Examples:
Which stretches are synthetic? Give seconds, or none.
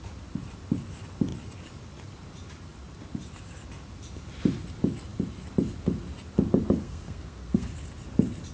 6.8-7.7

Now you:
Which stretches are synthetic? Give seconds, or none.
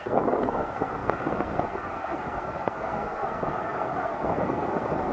0.0-5.1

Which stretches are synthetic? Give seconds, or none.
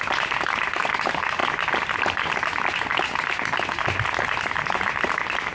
none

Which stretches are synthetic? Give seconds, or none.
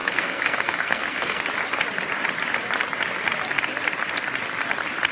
0.0-1.4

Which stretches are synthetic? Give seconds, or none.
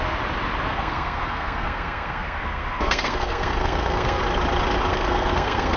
0.7-4.2; 4.9-5.8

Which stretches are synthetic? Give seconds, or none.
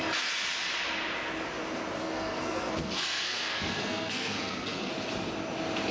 2.0-4.9